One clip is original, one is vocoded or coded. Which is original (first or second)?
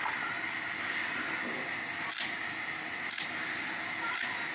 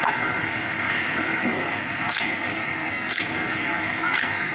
first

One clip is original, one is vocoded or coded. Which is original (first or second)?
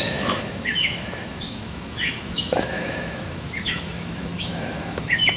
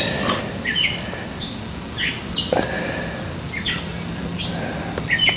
second